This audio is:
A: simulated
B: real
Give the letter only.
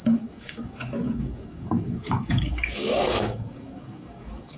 A